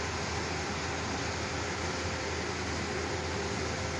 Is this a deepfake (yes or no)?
no